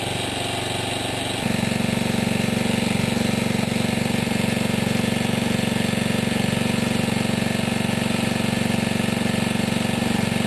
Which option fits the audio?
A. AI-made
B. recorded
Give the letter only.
B